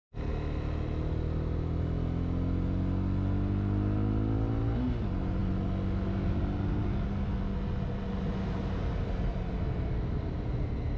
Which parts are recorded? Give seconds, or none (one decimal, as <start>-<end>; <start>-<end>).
0.0-11.0